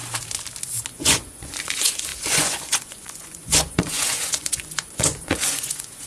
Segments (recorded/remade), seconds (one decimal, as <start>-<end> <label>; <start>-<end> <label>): 0.0-0.9 recorded; 0.9-6.1 remade